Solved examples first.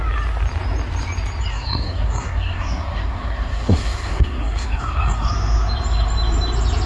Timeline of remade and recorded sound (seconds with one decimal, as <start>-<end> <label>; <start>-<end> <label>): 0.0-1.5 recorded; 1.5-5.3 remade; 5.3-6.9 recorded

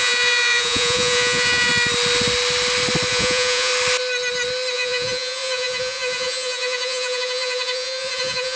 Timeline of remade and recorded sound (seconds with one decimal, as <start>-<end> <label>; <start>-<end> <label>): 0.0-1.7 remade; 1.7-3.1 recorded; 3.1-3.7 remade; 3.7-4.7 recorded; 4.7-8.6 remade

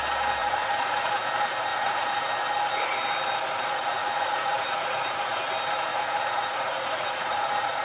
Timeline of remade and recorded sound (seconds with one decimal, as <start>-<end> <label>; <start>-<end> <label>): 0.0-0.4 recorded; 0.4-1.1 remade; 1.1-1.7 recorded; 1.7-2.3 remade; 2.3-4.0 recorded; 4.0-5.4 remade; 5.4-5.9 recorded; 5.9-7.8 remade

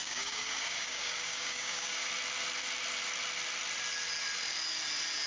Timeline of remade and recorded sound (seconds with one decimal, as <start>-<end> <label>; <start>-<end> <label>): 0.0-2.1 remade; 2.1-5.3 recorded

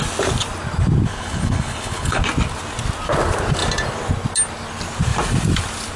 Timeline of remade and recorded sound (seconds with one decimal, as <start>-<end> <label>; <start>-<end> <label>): 0.0-1.1 recorded; 1.1-2.2 remade; 2.2-6.0 recorded